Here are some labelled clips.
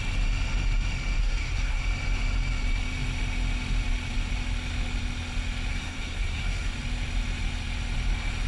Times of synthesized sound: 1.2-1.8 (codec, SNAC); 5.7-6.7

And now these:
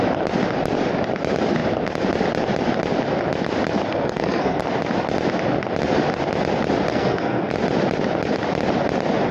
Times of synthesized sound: 3.9-4.6 (codec, SNAC); 6.9-7.5

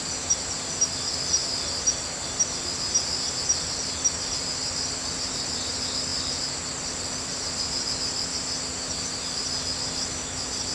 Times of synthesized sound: none

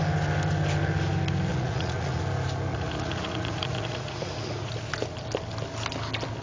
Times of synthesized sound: 1.5-2.2 (vocoder, Vocos); 2.7-4.7